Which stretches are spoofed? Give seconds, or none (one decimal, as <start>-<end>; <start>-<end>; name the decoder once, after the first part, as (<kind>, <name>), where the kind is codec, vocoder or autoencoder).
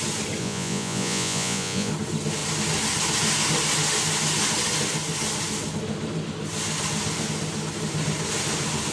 0.4-1.9 (vocoder, Vocos)